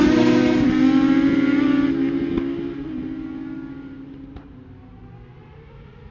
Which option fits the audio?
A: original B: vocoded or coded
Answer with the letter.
A